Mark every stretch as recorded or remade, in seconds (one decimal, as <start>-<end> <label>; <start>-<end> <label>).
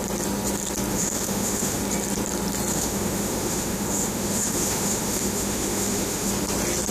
0.0-0.9 recorded; 0.9-1.8 remade; 1.8-2.7 recorded; 2.7-6.3 remade; 6.3-6.9 recorded